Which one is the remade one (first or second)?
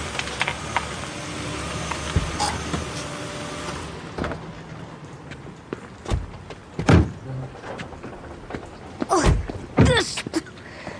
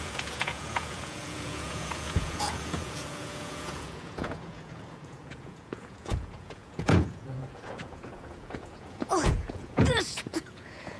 second